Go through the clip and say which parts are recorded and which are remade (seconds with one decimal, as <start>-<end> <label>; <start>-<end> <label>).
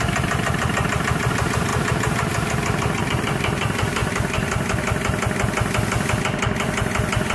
0.0-1.7 remade; 1.7-3.0 recorded; 3.0-4.0 remade; 4.0-6.2 recorded; 6.2-7.3 remade